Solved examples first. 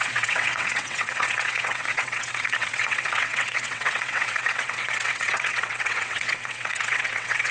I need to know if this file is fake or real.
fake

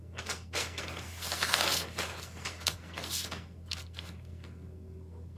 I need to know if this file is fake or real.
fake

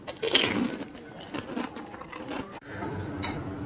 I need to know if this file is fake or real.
real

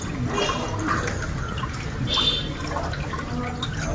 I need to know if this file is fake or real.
real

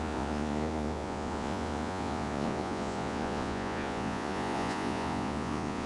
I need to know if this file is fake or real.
fake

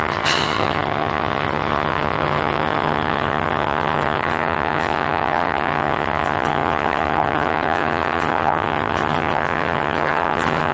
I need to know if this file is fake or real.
fake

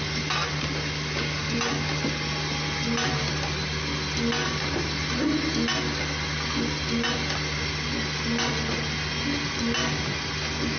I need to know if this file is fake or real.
real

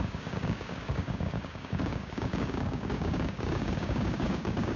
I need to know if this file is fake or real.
fake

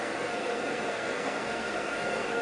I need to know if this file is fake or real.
fake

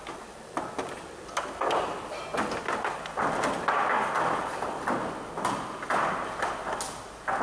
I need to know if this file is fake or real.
real